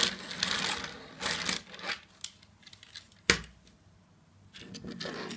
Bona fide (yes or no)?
yes